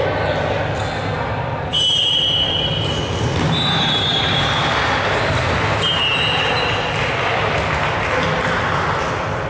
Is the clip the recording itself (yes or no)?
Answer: yes